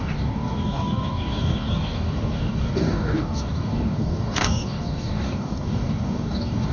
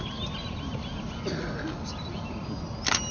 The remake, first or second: first